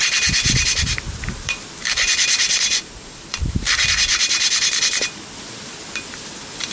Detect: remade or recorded recorded